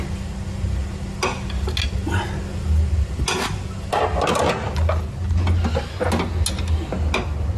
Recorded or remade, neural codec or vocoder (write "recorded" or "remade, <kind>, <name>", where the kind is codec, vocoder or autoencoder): recorded